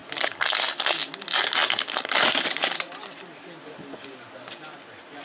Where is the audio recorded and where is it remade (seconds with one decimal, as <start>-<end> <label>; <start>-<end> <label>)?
0.0-5.2 recorded